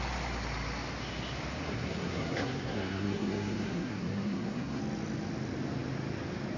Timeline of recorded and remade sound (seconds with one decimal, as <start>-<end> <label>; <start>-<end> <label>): 0.0-1.6 recorded; 1.6-4.8 remade; 4.8-6.6 recorded